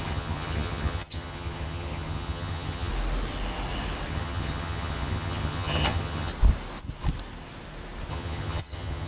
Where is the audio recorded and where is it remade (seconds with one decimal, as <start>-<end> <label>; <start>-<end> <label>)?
0.0-2.9 remade; 2.9-4.1 recorded; 4.1-6.3 remade; 6.3-8.1 recorded; 8.1-9.1 remade

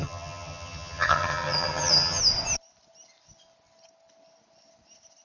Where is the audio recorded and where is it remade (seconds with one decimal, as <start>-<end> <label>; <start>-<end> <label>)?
0.0-2.2 remade; 2.2-5.2 recorded

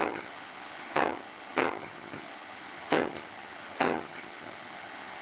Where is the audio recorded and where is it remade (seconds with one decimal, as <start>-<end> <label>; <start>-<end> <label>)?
0.0-5.2 remade

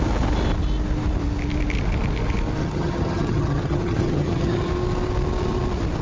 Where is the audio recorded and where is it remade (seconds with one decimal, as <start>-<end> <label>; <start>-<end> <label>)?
0.0-2.6 recorded; 2.6-4.7 remade; 4.7-6.0 recorded